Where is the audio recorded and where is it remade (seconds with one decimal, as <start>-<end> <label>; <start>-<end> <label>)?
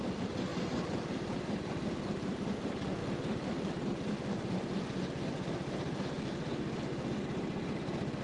0.0-0.5 recorded; 0.5-1.7 remade; 1.7-3.0 recorded; 3.0-6.3 remade; 6.3-8.2 recorded